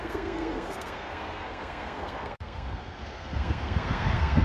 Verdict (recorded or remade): remade